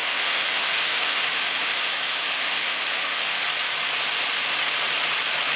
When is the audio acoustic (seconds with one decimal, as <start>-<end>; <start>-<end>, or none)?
3.4-5.6